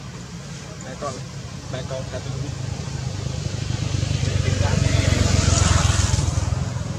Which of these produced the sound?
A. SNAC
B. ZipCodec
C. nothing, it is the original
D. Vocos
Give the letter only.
C